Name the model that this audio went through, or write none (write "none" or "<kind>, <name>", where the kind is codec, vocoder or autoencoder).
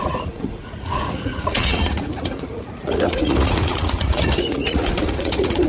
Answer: vocoder, Vocos